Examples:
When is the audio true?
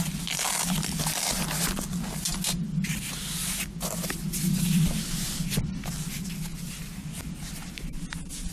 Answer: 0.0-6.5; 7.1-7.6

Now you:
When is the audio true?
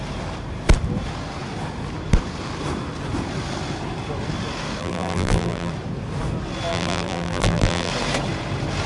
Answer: 0.0-4.8; 5.7-6.7; 7.9-8.9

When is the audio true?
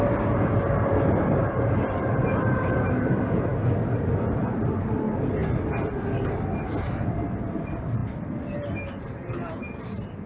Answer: 0.0-10.3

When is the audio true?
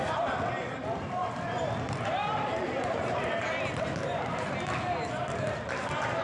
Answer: 0.0-1.2; 3.9-6.2